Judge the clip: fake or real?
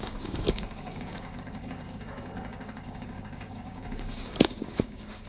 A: fake